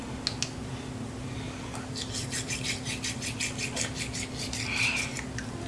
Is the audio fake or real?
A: real